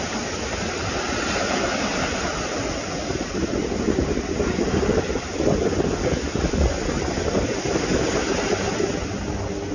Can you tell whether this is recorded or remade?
recorded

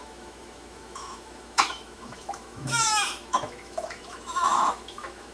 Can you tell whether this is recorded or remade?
remade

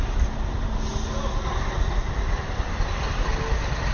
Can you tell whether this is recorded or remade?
recorded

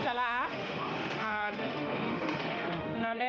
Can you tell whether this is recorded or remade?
remade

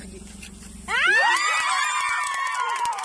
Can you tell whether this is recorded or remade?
recorded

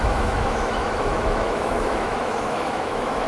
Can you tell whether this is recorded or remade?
remade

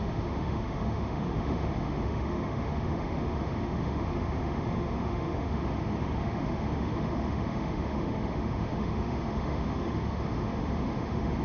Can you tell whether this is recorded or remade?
remade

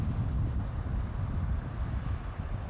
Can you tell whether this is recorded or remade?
recorded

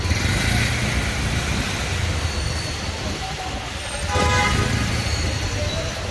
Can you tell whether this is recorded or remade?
recorded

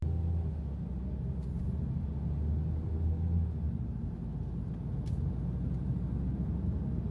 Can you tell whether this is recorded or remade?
recorded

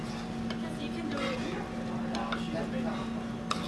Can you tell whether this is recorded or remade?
recorded